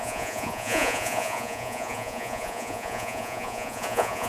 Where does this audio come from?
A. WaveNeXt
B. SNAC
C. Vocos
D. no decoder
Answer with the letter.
C